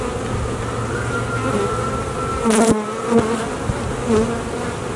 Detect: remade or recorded recorded